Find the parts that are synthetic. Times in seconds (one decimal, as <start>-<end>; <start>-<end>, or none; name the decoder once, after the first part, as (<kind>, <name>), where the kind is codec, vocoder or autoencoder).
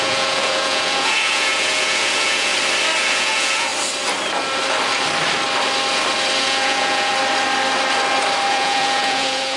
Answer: 0.0-2.5 (vocoder, Vocos); 3.0-3.7; 6.4-7.1; 8.5-9.6